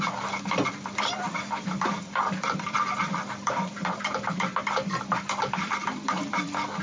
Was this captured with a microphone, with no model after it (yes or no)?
no